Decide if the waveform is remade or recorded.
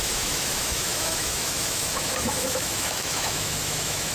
remade